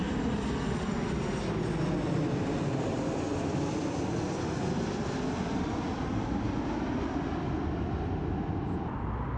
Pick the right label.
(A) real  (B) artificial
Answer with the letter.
A